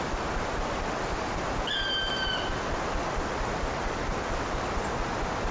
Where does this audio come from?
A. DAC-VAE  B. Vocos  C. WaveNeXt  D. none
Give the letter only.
D